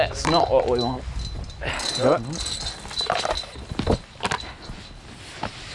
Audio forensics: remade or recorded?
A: recorded